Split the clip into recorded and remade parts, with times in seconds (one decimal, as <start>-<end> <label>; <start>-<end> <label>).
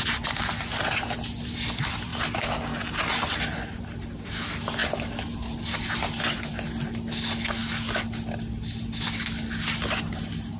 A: 0.0-10.6 recorded